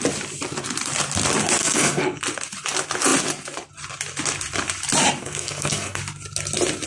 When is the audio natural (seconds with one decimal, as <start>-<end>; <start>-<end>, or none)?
0.0-1.6; 2.2-5.2; 6.0-6.9